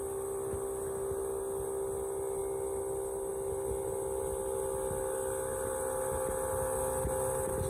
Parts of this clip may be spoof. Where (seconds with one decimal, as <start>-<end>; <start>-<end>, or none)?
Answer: none